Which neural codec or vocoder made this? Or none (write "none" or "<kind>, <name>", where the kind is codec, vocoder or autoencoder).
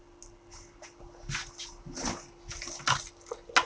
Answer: none